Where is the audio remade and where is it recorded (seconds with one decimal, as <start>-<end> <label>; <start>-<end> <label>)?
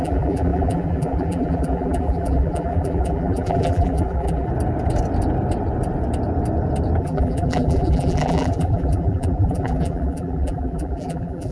0.0-4.5 remade; 4.5-7.0 recorded; 7.0-11.5 remade